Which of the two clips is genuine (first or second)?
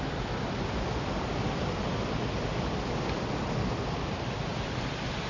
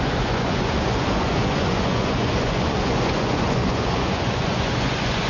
first